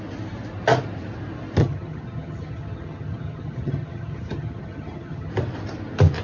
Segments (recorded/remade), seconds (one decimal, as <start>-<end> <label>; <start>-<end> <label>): 0.0-1.6 recorded; 1.6-5.3 remade; 5.3-6.2 recorded